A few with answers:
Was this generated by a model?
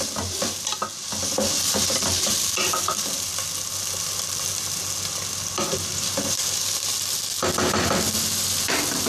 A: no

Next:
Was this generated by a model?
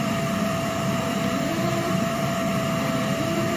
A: yes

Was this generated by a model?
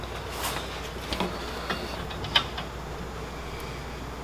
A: no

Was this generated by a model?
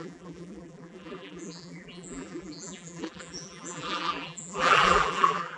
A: yes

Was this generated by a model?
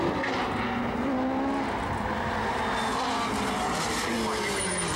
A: no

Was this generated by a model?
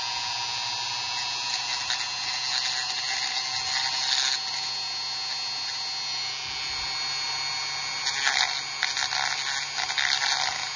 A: no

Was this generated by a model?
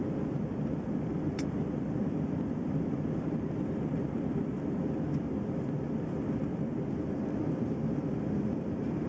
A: yes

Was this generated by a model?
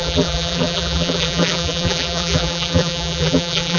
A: yes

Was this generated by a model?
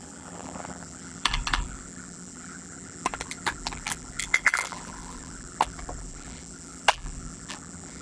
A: yes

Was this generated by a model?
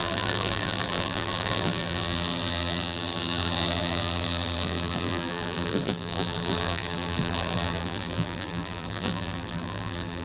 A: yes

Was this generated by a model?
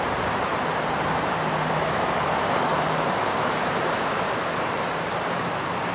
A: yes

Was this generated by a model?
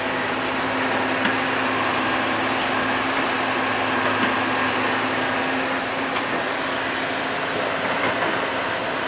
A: no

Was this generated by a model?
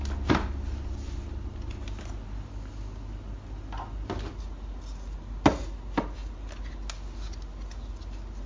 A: no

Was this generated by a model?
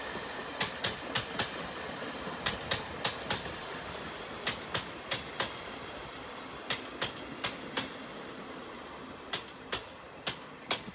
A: no